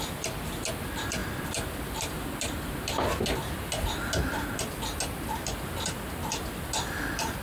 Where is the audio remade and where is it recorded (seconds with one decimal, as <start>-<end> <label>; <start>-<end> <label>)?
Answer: 0.0-7.4 recorded